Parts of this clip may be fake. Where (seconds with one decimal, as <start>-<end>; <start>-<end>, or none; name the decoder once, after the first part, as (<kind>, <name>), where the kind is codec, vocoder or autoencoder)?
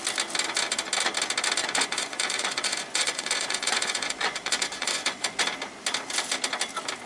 1.6-5.4 (vocoder, Vocos)